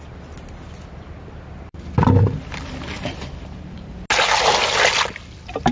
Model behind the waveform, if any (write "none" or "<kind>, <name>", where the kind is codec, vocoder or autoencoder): none